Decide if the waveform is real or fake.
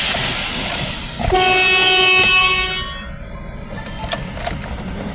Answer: real